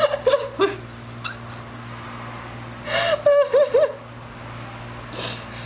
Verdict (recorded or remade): recorded